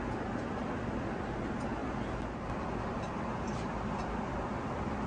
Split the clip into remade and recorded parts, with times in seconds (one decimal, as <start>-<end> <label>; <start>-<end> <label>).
0.0-5.1 recorded